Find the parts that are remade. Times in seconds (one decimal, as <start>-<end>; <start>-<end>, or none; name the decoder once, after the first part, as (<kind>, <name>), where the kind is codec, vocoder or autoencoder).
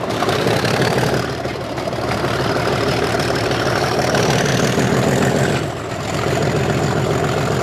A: 0.0-4.5 (vocoder, BigVGAN v2); 5.9-6.4